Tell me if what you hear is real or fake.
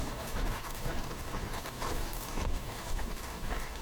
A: fake